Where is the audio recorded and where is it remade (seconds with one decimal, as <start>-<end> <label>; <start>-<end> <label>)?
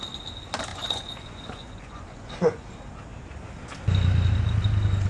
0.0-0.7 recorded; 0.7-2.7 remade; 2.7-5.1 recorded